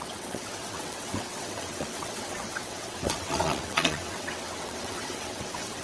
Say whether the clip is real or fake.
fake